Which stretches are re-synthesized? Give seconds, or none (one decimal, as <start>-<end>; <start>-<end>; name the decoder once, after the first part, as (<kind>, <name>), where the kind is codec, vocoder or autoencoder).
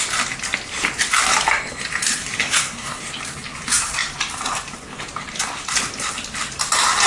2.4-3.0 (codec, SNAC)